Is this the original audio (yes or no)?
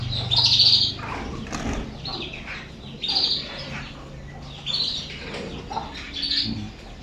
yes